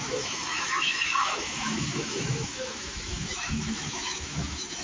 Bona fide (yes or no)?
no